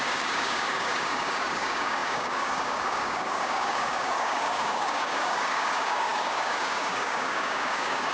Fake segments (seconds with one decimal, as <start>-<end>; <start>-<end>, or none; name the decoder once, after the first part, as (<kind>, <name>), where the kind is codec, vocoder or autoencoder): 0.0-8.1 (codec, DAC)